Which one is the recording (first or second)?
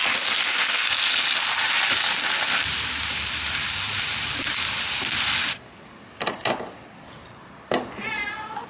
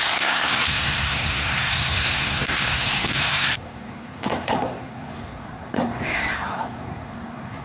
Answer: first